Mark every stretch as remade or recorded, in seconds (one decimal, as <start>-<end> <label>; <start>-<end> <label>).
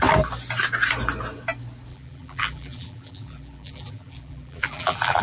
0.0-1.9 recorded; 1.9-5.2 remade